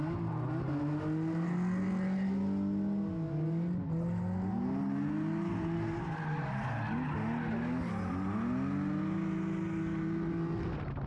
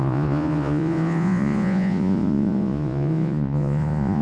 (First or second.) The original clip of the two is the first